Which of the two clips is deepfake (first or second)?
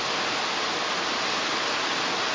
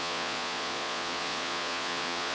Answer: second